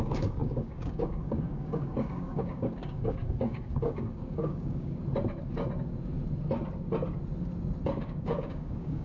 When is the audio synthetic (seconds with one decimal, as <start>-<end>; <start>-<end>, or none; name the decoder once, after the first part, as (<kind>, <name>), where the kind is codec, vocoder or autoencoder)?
0.0-5.0 (codec, DAC); 8.0-9.0